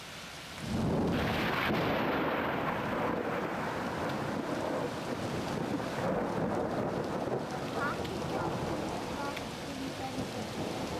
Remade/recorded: recorded